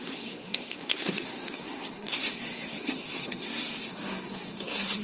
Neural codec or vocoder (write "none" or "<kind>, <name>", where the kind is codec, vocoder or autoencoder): codec, SNAC